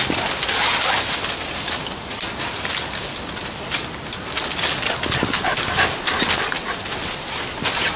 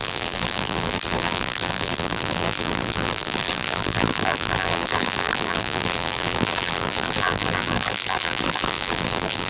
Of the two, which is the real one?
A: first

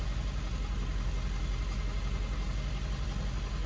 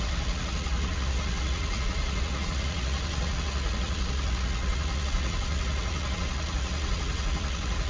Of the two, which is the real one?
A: first